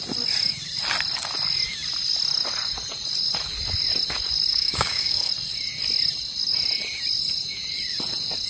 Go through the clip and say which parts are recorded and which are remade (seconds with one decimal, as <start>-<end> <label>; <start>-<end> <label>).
0.0-4.5 recorded; 4.5-5.3 remade; 5.3-8.5 recorded